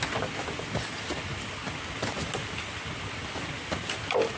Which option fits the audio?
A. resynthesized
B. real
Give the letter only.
B